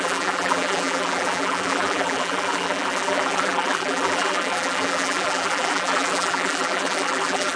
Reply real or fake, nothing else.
fake